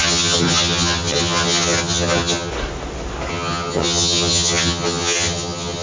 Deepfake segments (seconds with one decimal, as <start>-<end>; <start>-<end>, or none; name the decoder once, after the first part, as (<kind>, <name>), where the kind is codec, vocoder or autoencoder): 0.0-2.5 (vocoder, HiFi-GAN); 3.3-5.8

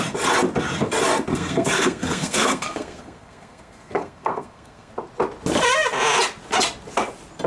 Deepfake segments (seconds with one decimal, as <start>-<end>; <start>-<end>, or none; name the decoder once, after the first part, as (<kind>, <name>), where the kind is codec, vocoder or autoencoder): 1.3-4.9 (codec, SNAC)

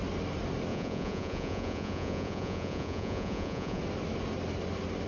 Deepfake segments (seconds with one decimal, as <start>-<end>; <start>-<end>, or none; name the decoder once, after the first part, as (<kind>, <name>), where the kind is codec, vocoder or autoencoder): 0.7-3.8 (vocoder, Vocos)

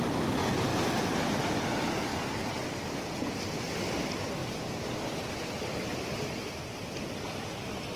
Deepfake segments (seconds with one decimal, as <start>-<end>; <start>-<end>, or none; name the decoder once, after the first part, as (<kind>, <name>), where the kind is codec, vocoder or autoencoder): 0.7-1.7 (vocoder, BigVGAN v2)

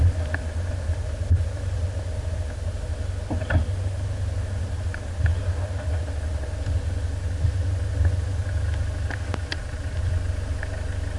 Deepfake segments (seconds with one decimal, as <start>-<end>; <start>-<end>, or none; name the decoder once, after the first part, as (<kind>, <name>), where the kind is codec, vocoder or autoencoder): none

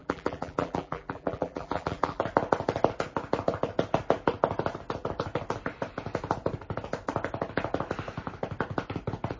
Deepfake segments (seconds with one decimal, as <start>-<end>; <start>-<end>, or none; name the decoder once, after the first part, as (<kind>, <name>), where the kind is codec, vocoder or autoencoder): 0.0-2.2 (vocoder, BigVGAN v2)

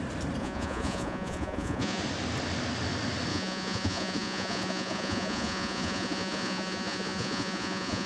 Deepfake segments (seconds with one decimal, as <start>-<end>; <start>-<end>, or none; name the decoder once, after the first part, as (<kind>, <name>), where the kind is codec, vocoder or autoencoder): 0.4-2.0 (vocoder, Vocos); 3.3-8.1